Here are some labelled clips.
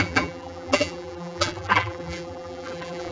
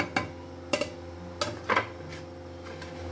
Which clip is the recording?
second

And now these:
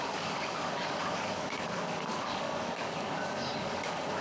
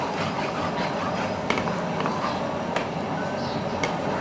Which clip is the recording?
second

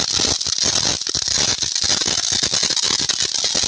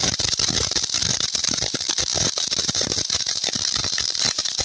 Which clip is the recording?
first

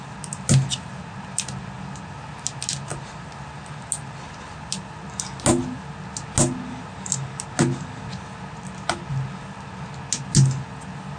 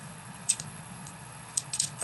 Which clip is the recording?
first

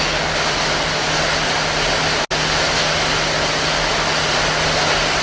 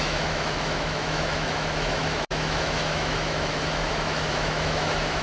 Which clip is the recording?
first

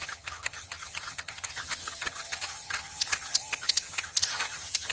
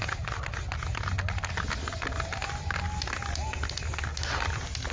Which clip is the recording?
second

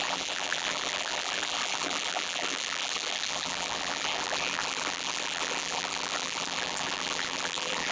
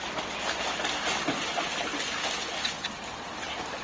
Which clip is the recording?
second